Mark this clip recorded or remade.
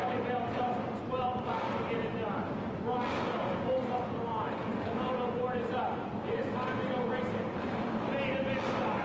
recorded